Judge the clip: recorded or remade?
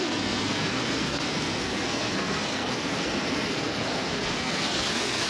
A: remade